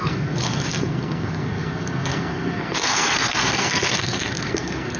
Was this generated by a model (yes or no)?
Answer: yes